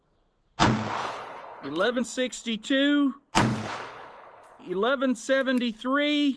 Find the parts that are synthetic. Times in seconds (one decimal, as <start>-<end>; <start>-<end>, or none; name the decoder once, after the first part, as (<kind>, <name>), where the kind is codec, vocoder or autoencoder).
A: 1.0-2.0 (codec, HILCodec); 3.5-4.6